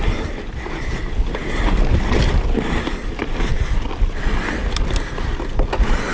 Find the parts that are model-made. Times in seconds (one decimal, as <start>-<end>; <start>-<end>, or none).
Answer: none